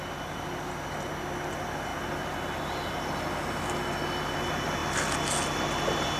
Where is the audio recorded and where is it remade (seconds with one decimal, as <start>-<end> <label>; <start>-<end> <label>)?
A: 0.0-6.2 recorded